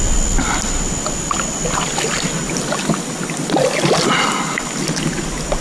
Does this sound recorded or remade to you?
recorded